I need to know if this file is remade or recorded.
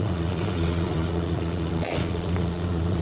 remade